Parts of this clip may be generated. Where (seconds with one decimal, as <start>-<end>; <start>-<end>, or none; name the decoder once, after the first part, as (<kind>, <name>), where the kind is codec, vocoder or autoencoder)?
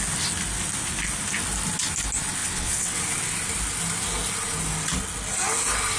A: 2.4-3.0 (vocoder, WaveNeXt)